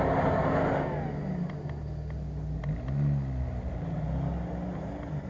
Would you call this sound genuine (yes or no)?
yes